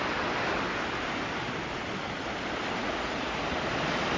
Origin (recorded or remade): recorded